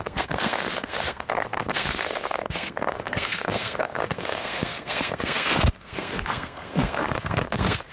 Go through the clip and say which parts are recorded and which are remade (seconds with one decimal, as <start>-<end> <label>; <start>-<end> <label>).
0.0-7.9 remade